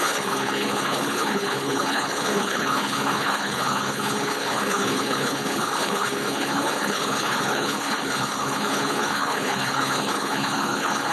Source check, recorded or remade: remade